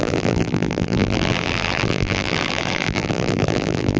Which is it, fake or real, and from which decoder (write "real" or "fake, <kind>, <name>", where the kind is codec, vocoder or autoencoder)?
fake, vocoder, BigVGAN v2